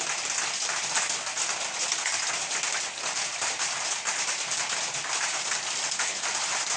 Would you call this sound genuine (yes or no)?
yes